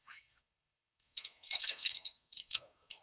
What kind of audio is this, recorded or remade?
remade